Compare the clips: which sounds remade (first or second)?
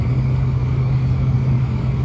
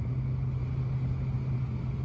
first